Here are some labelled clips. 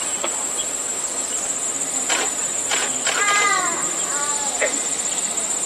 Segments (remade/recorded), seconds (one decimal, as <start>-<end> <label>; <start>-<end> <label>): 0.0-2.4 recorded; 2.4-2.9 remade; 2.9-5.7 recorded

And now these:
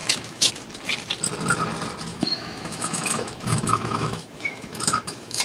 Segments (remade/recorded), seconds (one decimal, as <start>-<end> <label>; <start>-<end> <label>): 0.0-0.5 remade; 0.5-2.1 recorded; 2.1-5.4 remade

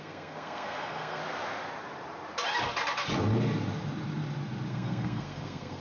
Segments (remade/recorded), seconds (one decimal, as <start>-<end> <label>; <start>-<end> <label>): 0.0-1.2 remade; 1.2-4.7 recorded; 4.7-5.8 remade